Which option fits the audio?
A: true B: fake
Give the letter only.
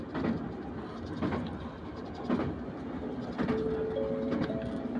A